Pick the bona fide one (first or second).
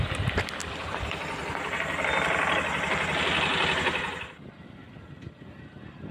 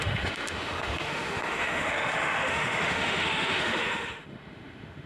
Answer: first